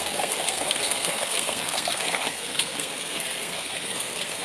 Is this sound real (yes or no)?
no